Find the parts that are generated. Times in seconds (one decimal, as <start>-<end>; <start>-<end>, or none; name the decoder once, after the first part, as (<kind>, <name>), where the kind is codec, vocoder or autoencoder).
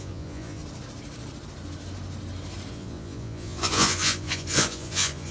0.0-0.6 (vocoder, Vocos); 2.7-5.3